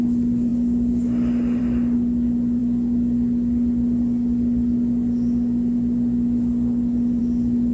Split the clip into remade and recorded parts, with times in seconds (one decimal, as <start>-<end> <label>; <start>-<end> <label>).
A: 0.0-7.7 recorded